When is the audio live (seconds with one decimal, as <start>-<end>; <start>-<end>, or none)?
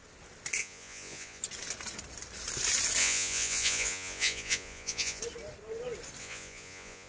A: 0.0-0.6; 1.4-3.0; 5.2-6.2